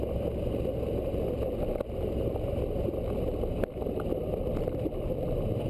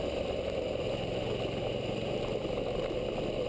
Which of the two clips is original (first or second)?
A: second